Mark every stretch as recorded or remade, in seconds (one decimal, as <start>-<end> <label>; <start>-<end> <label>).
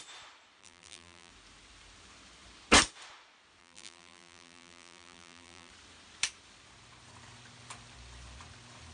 0.0-0.6 recorded; 0.6-1.3 remade; 1.3-3.6 recorded; 3.6-5.7 remade; 5.7-8.9 recorded